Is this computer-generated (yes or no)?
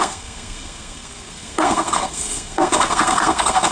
yes